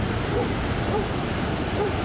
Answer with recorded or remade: recorded